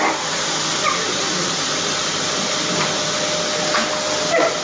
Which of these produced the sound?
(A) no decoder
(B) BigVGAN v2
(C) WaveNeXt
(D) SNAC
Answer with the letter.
A